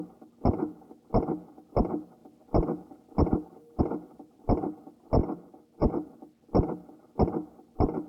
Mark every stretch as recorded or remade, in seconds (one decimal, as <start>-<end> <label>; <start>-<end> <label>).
0.0-8.1 recorded